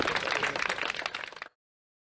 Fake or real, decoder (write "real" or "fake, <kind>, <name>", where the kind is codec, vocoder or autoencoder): real